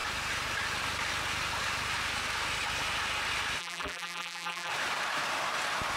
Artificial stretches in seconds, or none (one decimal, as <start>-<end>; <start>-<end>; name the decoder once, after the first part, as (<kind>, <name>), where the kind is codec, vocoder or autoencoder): 3.6-4.7 (vocoder, BigVGAN v2)